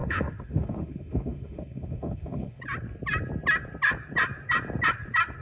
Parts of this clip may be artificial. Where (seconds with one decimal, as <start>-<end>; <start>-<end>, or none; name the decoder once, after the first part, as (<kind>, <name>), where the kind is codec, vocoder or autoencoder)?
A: 0.0-2.6 (autoencoder, DAC-VAE)